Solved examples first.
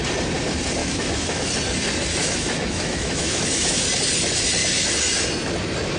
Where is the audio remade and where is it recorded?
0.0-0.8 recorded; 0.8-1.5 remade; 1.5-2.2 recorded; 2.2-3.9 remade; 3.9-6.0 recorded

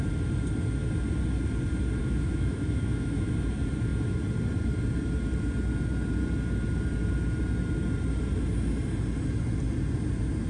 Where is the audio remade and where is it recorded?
0.0-2.0 recorded; 2.0-3.3 remade; 3.3-10.5 recorded

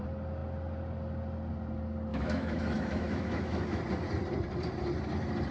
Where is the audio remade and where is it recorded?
0.0-2.1 recorded; 2.1-3.8 remade; 3.8-5.5 recorded

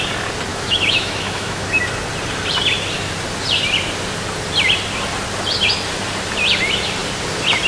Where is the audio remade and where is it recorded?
0.0-0.5 recorded; 0.5-1.7 remade; 1.7-7.7 recorded